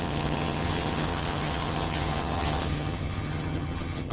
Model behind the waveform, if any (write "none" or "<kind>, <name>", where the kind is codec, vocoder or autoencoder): vocoder, HiFi-GAN